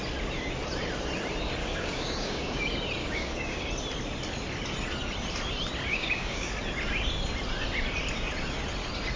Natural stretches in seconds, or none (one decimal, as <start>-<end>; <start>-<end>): 0.0-1.6; 2.6-3.0; 3.6-5.9; 6.5-9.2